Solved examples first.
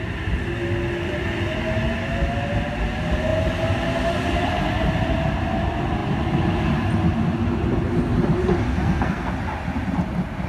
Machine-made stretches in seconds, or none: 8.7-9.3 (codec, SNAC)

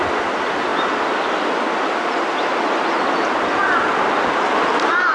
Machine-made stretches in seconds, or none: none

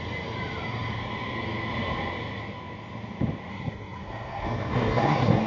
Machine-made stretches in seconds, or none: 3.5-5.5 (codec, SNAC)

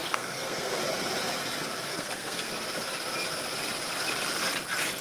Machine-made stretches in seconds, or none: 0.0-0.8 (codec, SNAC); 1.9-2.5

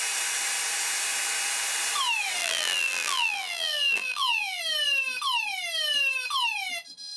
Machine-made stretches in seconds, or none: 2.4-4.6 (vocoder, BigVGAN v2)